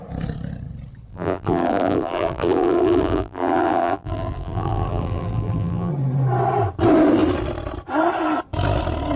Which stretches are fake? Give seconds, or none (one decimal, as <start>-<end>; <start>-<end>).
1.1-5.9